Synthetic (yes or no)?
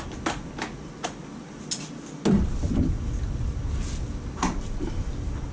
no